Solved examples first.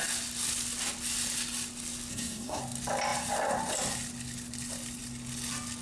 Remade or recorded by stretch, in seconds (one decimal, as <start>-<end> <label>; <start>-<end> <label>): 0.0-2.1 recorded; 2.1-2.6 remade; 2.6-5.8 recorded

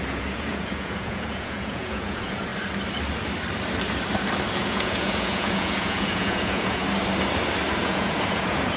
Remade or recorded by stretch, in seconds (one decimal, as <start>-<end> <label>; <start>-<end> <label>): 0.0-2.5 remade; 2.5-4.6 recorded; 4.6-6.8 remade; 6.8-7.8 recorded; 7.8-8.8 remade

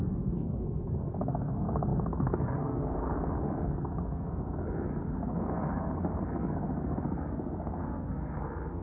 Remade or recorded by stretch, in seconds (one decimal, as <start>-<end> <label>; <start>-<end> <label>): 0.0-8.8 remade

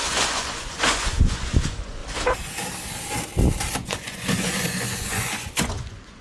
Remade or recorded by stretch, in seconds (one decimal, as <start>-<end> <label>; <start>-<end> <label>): 0.0-2.0 remade; 2.0-3.7 recorded; 3.7-6.2 remade

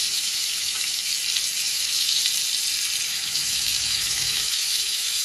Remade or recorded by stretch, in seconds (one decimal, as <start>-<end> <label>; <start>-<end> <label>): 0.0-1.1 remade; 1.1-1.6 recorded; 1.6-2.2 remade; 2.2-3.1 recorded; 3.1-5.2 remade

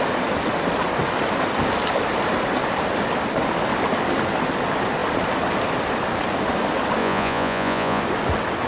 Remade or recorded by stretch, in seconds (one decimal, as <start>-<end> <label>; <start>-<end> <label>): 0.0-7.0 recorded; 7.0-8.0 remade; 8.0-8.7 recorded

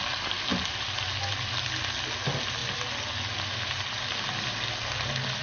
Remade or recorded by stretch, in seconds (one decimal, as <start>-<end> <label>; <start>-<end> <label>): 0.0-5.4 recorded